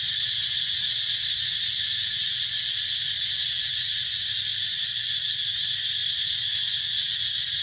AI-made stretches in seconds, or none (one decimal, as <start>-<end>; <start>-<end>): none